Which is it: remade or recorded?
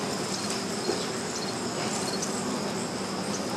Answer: recorded